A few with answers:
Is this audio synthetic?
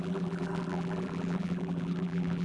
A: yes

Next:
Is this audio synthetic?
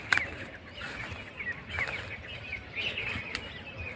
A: no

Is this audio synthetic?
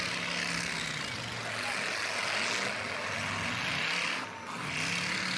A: no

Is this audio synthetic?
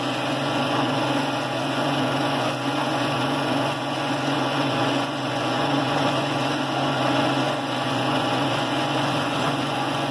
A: yes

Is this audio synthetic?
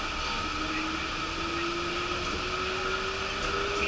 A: no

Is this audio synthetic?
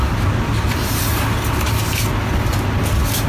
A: no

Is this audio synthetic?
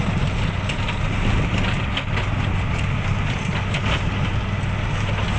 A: no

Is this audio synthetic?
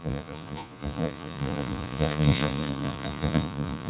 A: yes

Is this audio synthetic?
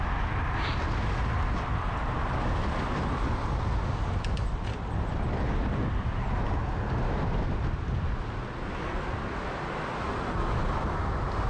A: no